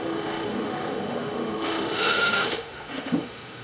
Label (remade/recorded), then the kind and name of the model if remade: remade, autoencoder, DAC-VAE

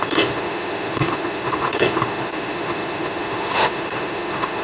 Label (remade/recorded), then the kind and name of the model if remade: remade, autoencoder, DAC-VAE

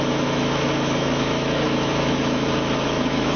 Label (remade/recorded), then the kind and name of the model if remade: remade, autoencoder, DAC-VAE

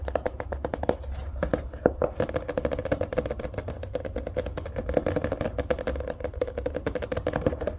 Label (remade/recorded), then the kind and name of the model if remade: recorded